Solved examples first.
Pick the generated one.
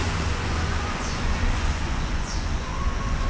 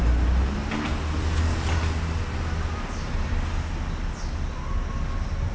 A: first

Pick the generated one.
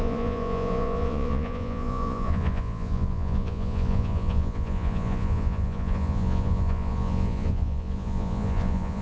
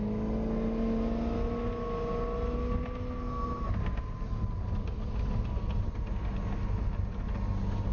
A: first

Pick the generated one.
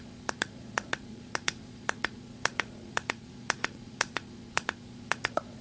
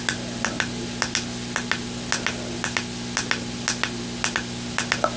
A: first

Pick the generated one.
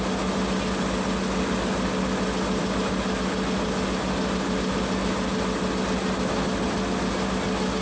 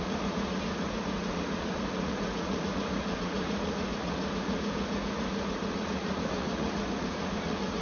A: second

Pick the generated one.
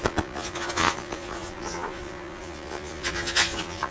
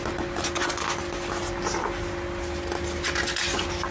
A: first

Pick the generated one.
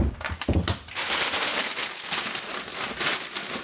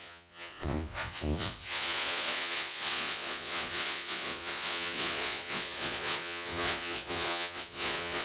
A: second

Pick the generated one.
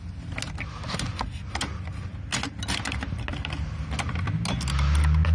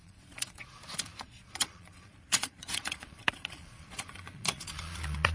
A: second